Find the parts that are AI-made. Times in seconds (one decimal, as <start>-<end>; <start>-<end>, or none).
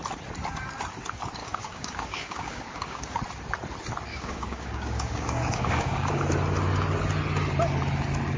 1.4-3.2; 4.1-6.2